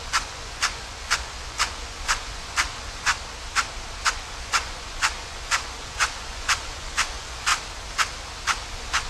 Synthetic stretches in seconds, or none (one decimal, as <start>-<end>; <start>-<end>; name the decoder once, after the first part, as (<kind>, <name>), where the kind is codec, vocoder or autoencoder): 0.0-3.1 (vocoder, Vocos); 4.1-7.5; 8.7-9.1